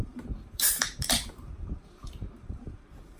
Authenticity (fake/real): fake